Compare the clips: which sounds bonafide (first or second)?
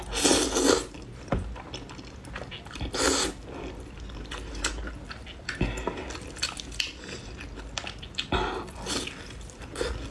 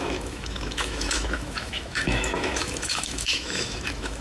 first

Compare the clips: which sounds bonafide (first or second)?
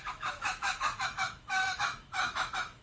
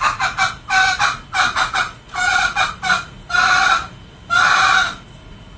second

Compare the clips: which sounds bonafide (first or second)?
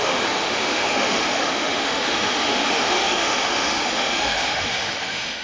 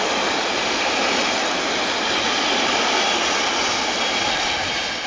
second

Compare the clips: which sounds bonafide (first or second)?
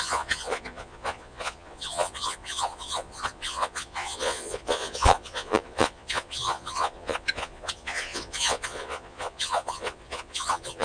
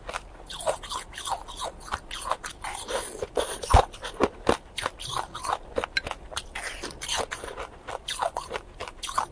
second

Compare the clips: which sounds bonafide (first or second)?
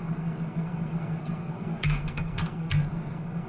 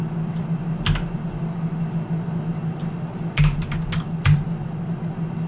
second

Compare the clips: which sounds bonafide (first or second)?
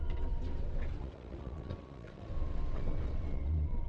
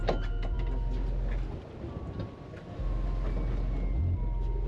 second